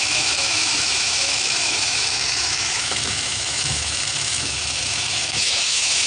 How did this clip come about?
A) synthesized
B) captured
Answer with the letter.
A